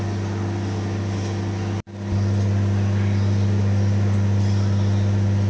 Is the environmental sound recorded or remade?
recorded